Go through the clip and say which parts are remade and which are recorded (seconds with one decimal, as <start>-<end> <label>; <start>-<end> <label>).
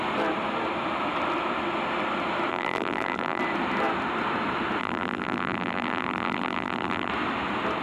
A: 0.0-2.5 recorded; 2.5-3.4 remade; 3.4-4.8 recorded; 4.8-7.1 remade; 7.1-7.8 recorded